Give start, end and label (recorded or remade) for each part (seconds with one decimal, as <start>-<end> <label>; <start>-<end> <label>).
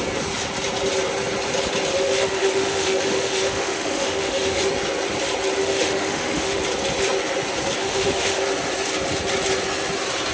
0.0-1.9 recorded; 1.9-4.6 remade; 4.6-5.6 recorded; 5.6-6.6 remade; 6.6-7.8 recorded; 7.8-8.4 remade; 8.4-10.3 recorded